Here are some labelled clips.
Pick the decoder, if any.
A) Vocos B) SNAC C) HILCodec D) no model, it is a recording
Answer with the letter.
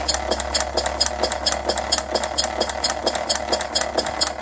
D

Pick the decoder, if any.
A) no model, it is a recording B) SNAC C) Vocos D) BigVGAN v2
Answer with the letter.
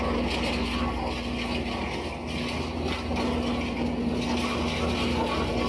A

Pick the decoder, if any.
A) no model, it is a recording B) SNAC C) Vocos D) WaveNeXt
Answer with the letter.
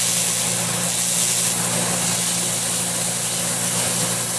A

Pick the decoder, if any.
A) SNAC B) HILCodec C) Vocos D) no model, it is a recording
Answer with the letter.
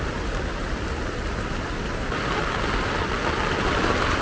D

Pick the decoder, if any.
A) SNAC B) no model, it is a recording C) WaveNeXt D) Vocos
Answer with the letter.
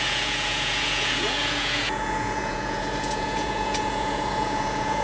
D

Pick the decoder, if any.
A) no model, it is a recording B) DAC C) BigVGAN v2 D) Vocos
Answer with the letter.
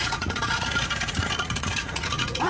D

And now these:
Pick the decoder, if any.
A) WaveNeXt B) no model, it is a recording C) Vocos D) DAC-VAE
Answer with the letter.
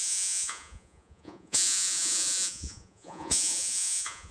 C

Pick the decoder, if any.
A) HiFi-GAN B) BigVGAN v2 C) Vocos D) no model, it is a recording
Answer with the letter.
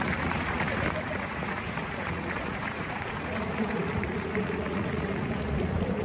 C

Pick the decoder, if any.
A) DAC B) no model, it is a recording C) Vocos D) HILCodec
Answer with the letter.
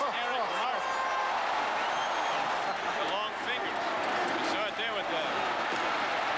B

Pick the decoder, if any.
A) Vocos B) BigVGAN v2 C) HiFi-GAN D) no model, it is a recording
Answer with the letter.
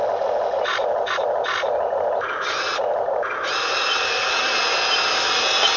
D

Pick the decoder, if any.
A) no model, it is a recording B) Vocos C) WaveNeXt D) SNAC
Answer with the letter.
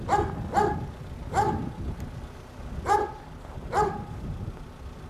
A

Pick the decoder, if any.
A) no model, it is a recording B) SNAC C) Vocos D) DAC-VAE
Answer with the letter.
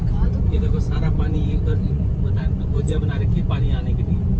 C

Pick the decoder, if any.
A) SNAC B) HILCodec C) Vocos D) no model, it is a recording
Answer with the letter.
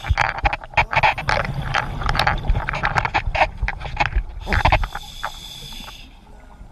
D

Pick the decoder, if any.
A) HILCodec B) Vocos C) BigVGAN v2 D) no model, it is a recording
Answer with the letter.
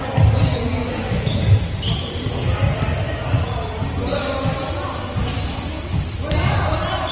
D